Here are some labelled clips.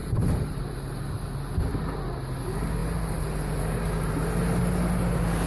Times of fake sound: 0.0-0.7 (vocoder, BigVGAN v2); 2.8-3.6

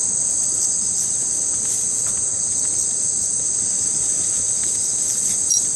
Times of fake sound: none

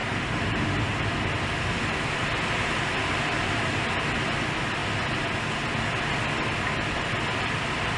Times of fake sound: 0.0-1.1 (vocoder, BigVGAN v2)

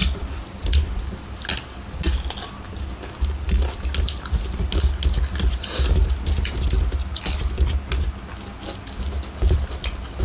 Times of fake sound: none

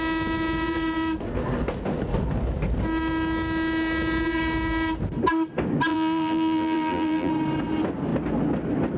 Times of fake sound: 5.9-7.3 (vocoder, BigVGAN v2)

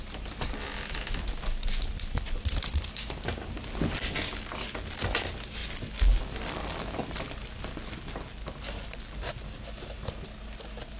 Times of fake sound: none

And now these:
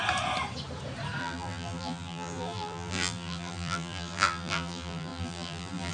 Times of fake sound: 1.2-5.9 (vocoder, BigVGAN v2)

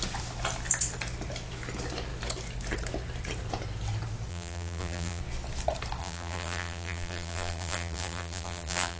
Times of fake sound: 4.3-5.2 (vocoder, BigVGAN v2); 6.0-9.0